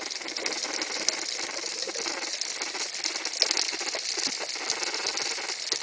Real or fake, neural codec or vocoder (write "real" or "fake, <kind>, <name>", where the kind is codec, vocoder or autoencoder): real